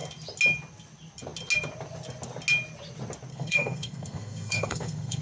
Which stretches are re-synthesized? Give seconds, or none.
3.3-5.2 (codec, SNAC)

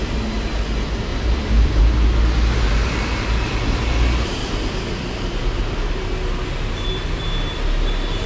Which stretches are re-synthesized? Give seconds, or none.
1.1-1.8 (vocoder, BigVGAN v2); 4.4-5.4

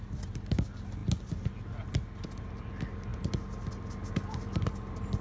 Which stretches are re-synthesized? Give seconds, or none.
none

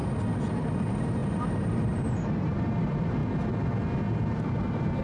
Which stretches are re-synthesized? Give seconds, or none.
0.5-3.2 (vocoder, BigVGAN v2); 4.2-5.0

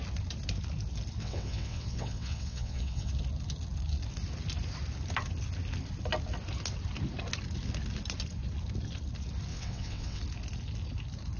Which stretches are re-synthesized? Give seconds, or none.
1.2-3.1 (vocoder, WaveNeXt); 9.5-10.2